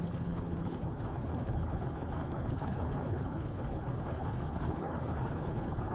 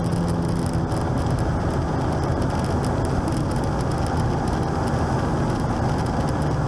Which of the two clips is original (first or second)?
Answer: second